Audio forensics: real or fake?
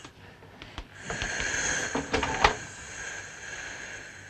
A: real